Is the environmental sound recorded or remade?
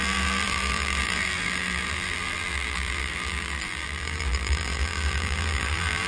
remade